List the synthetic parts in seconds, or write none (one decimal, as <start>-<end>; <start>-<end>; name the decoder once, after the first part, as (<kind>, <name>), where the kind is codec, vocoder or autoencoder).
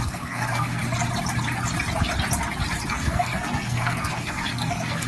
0.0-0.8 (codec, SNAC); 2.9-5.1